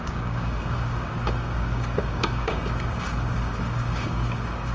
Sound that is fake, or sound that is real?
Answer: fake